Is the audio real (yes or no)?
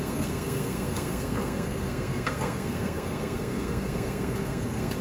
no